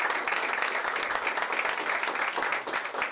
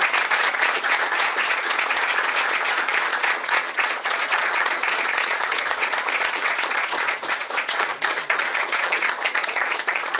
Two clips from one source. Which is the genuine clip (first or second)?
first